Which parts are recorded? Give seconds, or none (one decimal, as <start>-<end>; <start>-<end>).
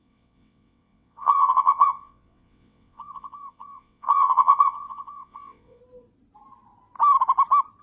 5.8-7.8